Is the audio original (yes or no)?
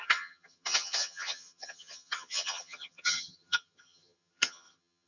no